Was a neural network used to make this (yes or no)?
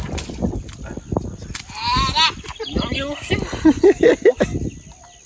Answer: no